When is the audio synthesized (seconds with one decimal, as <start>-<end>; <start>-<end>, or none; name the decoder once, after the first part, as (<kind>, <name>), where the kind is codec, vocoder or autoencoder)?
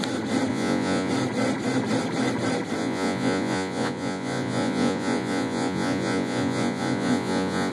0.5-1.1 (vocoder, Vocos); 2.8-7.7